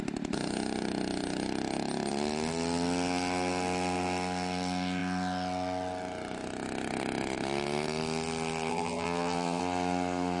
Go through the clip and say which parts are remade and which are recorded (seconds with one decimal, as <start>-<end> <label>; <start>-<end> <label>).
0.0-8.7 recorded; 8.7-9.6 remade; 9.6-10.4 recorded